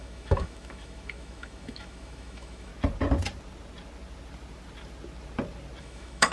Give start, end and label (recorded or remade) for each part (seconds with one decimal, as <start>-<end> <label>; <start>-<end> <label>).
0.0-2.7 remade; 2.7-5.8 recorded; 5.8-6.3 remade